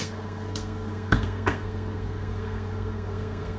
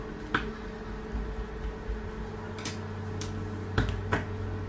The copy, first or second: first